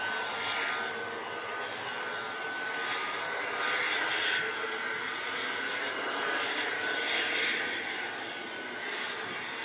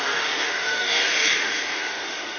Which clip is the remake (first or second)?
second